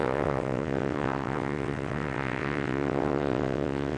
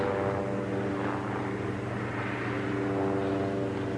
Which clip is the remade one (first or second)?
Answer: first